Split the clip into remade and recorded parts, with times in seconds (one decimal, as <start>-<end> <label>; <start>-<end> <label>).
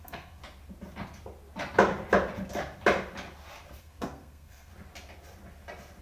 0.0-0.4 remade; 0.4-3.8 recorded; 3.8-4.7 remade; 4.7-6.0 recorded